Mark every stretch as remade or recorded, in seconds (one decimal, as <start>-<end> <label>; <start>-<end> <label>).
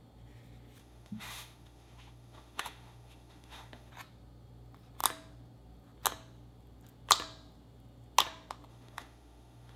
0.0-0.8 recorded; 0.8-3.9 remade; 3.9-8.7 recorded; 8.7-9.8 remade